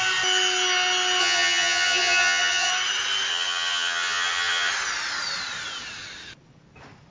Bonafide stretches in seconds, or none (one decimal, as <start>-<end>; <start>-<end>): 0.0-1.2; 2.7-3.3; 4.7-7.1